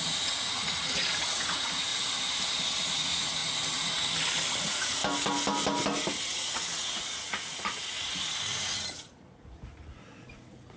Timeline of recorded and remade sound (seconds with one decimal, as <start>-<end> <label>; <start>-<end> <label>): 0.0-1.9 remade; 1.9-2.8 recorded; 2.8-3.4 remade; 3.4-4.6 recorded; 4.6-5.0 remade; 5.0-6.2 recorded; 6.2-10.8 remade